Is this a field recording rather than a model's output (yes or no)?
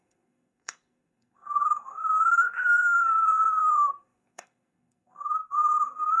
no